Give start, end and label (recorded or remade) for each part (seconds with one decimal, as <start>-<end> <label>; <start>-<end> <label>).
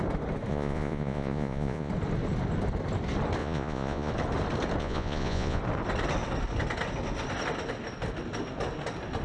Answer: 0.0-0.5 recorded; 0.5-1.9 remade; 1.9-3.4 recorded; 3.4-4.1 remade; 4.1-4.8 recorded; 4.8-5.6 remade; 5.6-9.2 recorded